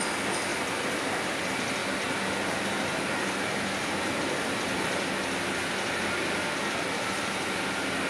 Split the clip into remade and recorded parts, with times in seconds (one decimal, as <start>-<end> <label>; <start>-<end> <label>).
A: 0.0-8.1 recorded